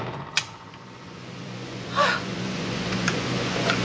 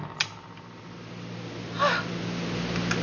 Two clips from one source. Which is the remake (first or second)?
first